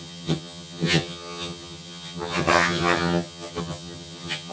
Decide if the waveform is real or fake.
fake